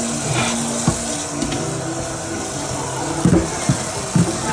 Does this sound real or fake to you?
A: real